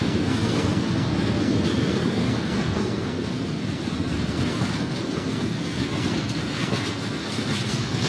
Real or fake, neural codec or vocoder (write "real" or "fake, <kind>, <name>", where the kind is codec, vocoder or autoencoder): fake, codec, SNAC